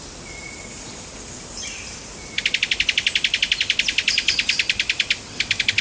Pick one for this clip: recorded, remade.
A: remade